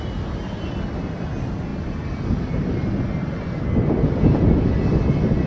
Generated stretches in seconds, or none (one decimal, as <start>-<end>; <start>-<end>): none